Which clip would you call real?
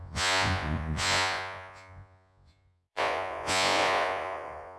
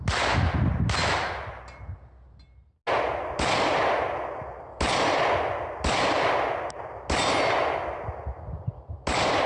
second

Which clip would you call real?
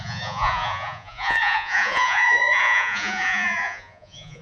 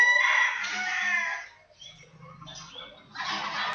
second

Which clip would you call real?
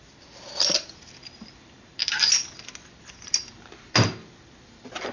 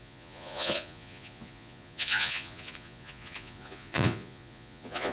first